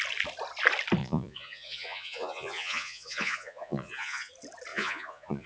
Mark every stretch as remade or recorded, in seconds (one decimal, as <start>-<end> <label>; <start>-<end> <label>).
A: 0.0-1.0 recorded; 1.0-4.3 remade; 4.3-4.7 recorded; 4.7-5.5 remade